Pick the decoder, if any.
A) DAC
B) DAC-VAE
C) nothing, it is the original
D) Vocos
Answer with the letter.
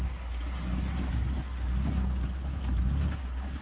C